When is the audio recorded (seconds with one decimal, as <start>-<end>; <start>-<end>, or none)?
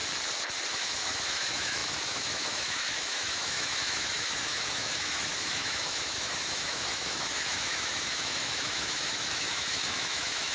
0.0-0.7